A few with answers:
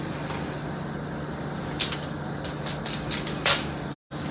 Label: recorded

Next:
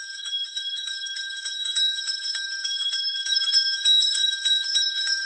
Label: remade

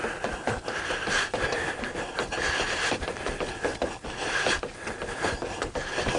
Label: recorded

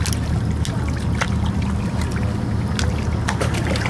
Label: recorded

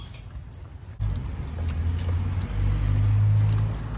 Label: recorded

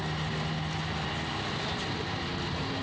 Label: recorded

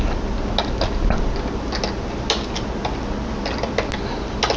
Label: recorded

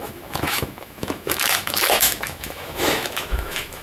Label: remade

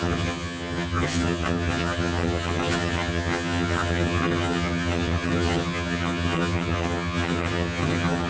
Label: remade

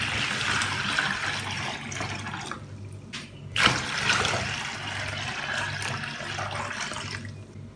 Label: recorded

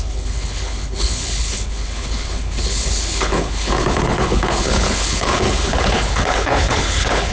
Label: remade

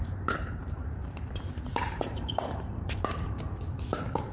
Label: remade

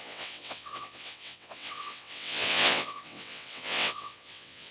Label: remade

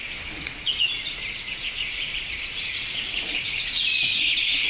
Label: remade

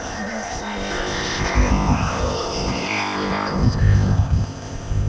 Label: remade